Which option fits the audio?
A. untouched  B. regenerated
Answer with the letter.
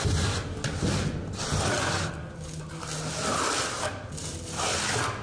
A